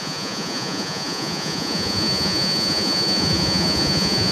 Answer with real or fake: fake